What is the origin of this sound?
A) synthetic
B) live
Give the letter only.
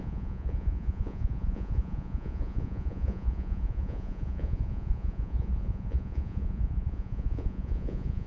A